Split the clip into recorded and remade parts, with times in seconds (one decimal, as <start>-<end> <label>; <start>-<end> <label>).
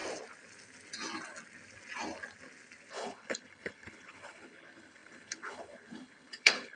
0.0-2.9 recorded; 2.9-6.8 remade